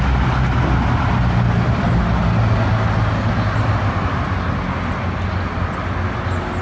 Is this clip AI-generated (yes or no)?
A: no